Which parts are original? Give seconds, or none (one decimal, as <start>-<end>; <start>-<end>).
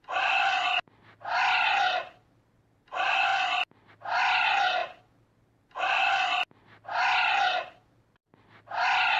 0.0-9.2